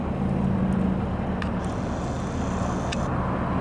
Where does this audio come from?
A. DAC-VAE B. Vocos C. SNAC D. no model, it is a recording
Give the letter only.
D